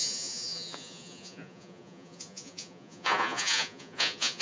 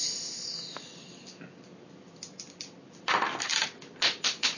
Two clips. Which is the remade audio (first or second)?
first